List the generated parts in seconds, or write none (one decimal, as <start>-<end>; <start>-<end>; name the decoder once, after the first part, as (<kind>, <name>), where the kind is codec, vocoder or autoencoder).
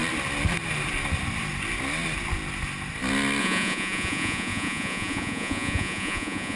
3.4-6.6 (vocoder, Vocos)